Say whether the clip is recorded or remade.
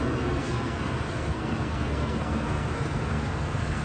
remade